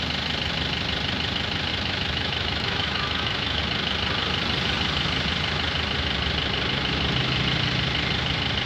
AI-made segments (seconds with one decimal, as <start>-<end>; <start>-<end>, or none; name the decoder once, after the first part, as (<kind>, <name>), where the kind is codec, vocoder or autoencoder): 1.7-3.6 (autoencoder, DAC-VAE)